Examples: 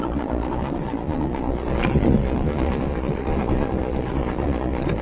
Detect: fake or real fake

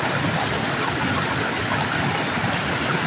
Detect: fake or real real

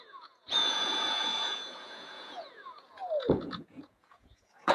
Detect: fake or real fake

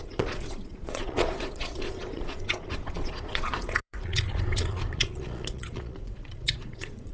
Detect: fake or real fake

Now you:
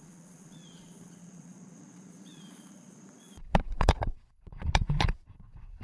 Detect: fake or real fake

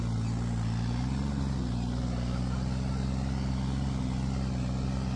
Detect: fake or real real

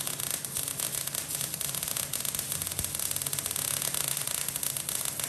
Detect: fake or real real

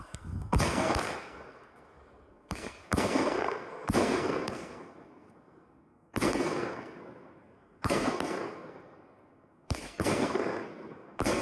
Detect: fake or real fake